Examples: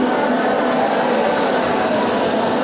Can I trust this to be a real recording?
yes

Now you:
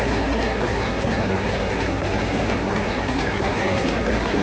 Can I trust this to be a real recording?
no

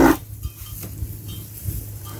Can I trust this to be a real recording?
yes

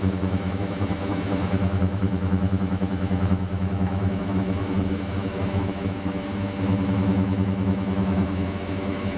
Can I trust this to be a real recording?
no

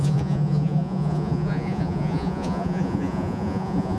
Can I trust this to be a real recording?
no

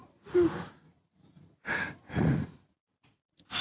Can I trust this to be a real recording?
no